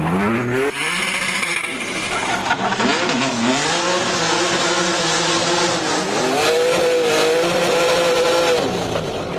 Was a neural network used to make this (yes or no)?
no